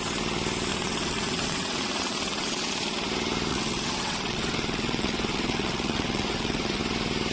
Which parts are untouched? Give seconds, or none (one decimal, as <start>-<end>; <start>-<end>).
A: 0.0-0.7; 2.7-3.5; 6.8-7.3